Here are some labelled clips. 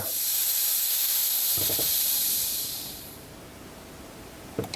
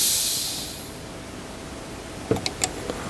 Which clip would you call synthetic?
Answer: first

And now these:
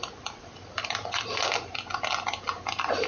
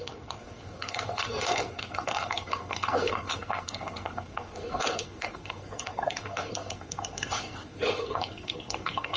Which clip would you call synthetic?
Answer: second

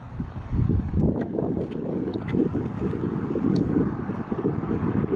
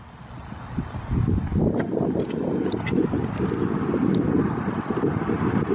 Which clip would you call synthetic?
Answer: first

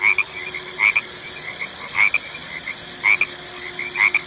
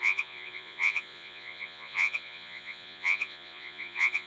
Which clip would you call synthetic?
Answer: second